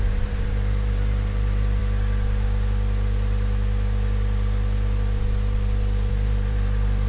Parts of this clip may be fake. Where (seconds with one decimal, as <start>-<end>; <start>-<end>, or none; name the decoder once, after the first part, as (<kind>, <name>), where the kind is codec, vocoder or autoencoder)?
0.0-1.8 (vocoder, BigVGAN v2); 6.1-7.1